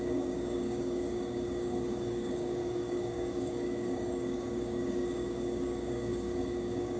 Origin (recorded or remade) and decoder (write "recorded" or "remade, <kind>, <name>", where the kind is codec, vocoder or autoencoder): remade, codec, DAC